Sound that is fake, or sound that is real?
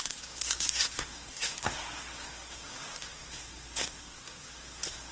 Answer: fake